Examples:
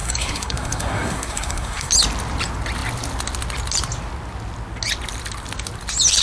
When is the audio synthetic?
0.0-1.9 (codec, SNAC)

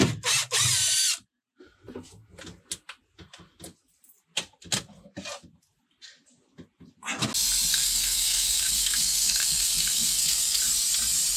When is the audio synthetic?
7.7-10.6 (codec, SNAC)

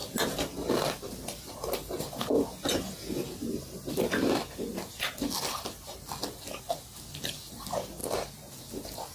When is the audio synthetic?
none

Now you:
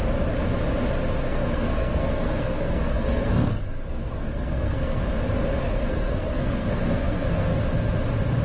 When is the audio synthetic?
1.3-5.0 (codec, SNAC); 5.6-7.6

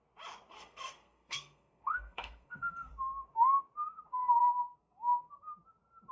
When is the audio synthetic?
0.5-2.9 (codec, SNAC); 4.4-5.5